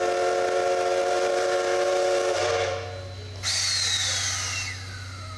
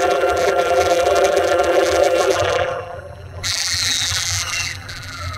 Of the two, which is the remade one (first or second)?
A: second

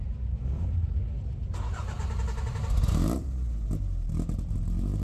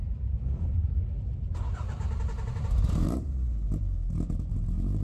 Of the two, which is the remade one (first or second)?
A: second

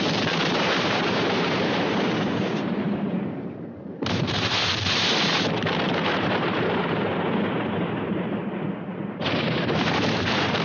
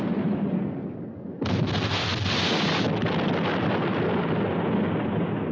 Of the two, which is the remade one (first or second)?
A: first